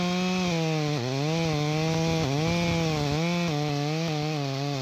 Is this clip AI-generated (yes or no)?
no